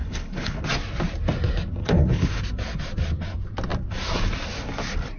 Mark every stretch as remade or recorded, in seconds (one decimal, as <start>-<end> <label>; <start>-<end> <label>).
0.0-0.6 remade; 0.6-1.8 recorded; 1.8-2.4 remade; 2.4-5.2 recorded